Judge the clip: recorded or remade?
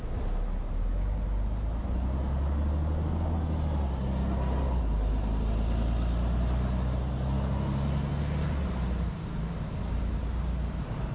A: recorded